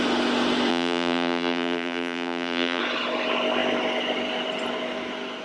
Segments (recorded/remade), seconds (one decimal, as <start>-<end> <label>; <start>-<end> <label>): 0.0-0.7 recorded; 0.7-2.8 remade; 2.8-5.4 recorded